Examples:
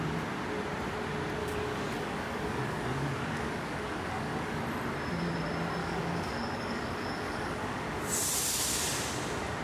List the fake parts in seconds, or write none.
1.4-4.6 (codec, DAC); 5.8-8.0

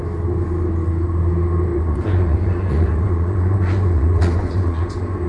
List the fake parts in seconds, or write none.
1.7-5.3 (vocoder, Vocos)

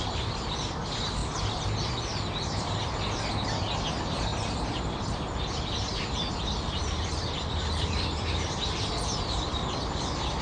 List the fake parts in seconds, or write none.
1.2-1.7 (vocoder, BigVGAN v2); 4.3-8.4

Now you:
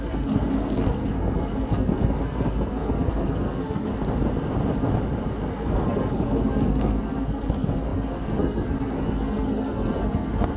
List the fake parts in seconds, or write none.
0.0-3.9 (codec, SNAC); 5.5-10.6

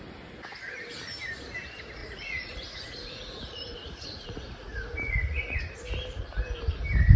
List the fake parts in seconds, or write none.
2.0-5.6 (vocoder, Vocos)

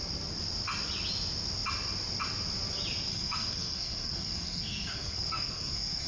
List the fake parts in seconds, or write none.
3.1-6.1 (codec, SNAC)